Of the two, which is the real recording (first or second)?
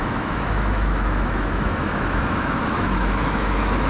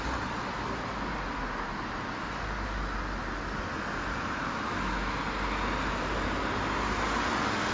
second